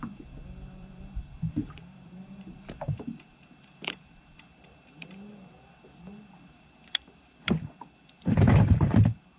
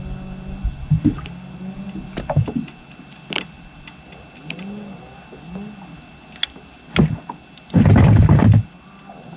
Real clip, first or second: second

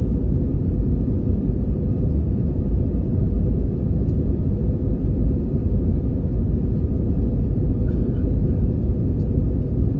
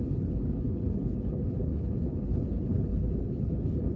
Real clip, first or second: first